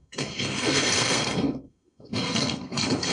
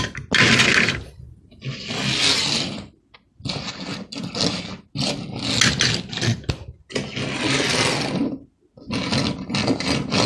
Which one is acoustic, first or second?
second